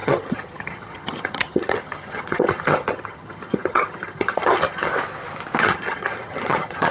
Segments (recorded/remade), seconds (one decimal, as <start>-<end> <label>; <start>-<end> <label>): 0.0-4.9 remade; 4.9-5.6 recorded; 5.6-6.9 remade